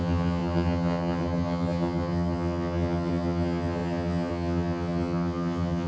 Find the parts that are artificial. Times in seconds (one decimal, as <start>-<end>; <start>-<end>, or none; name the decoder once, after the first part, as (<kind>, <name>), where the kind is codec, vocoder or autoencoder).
0.0-5.9 (vocoder, HiFi-GAN)